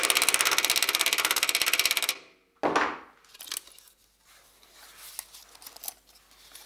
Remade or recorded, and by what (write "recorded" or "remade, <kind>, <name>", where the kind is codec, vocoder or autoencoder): recorded